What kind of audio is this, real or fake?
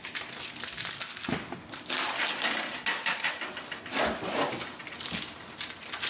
real